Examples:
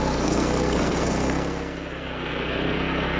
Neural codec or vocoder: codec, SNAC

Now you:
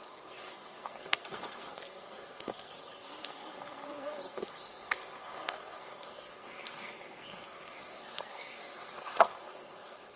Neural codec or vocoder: codec, SNAC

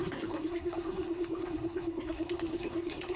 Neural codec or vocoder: codec, SNAC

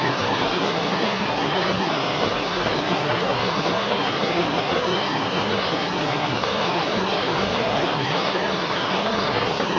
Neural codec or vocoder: codec, SNAC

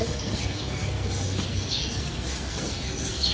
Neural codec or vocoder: codec, SNAC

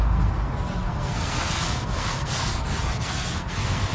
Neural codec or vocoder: codec, SNAC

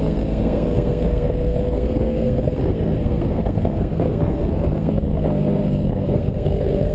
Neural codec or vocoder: codec, SNAC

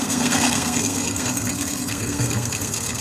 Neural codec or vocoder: codec, SNAC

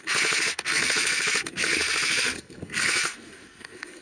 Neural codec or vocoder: codec, SNAC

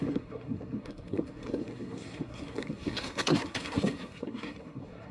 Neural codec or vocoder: codec, SNAC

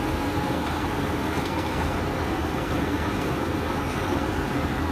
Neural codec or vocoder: codec, SNAC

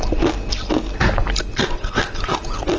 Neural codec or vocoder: none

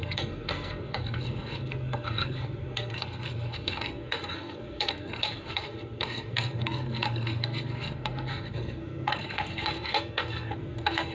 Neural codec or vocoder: codec, SNAC